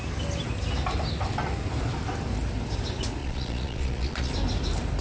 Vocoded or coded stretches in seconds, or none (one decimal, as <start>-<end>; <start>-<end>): 3.2-4.3

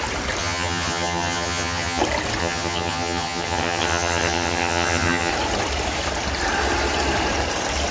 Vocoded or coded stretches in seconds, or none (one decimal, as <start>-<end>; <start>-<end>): 0.4-2.0; 2.4-5.3

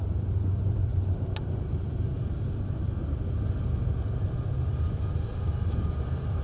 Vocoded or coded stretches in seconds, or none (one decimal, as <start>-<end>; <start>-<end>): 0.0-0.9; 1.4-2.1; 5.9-6.4

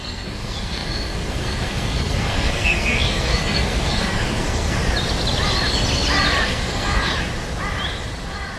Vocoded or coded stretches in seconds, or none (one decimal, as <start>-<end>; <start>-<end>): 0.0-4.8; 6.4-7.1

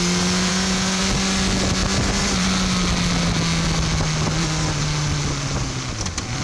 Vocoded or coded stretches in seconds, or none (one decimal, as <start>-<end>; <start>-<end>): 0.5-1.0

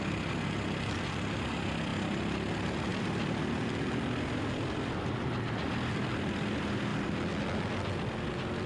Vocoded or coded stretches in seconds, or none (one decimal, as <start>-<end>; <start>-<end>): none

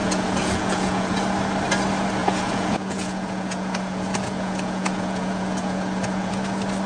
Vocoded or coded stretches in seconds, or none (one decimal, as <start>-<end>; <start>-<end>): 0.0-1.2; 2.2-6.3